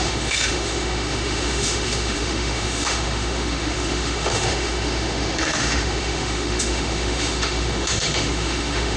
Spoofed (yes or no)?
yes